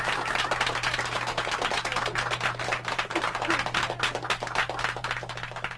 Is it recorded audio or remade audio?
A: recorded